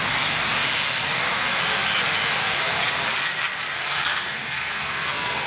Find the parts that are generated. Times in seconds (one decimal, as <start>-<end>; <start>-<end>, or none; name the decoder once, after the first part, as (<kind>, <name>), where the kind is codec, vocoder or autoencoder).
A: 3.9-5.5 (codec, SNAC)